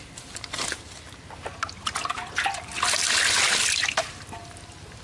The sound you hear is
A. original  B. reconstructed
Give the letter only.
A